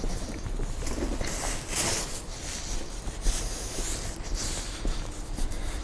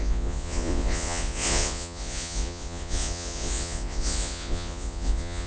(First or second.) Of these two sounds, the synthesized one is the second